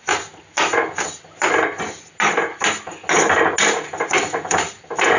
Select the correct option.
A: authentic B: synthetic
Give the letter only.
A